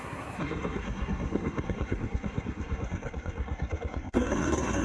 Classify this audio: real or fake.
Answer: fake